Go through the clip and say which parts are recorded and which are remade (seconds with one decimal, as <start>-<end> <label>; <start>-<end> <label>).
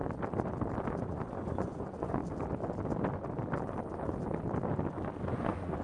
0.0-0.9 recorded; 0.9-2.2 remade; 2.2-5.3 recorded; 5.3-5.8 remade